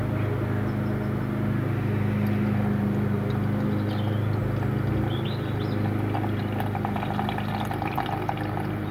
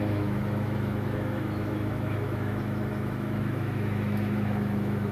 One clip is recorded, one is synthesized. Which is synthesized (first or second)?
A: second